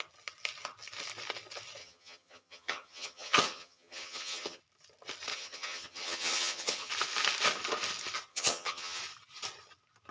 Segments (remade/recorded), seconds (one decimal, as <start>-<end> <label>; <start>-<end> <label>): 0.0-1.8 recorded; 1.8-4.6 remade; 4.6-5.3 recorded; 5.3-6.9 remade; 6.9-8.3 recorded; 8.3-9.0 remade; 9.0-10.1 recorded